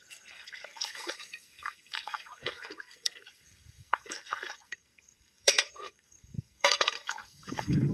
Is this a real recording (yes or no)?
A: no